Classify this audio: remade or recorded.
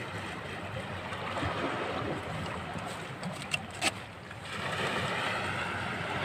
recorded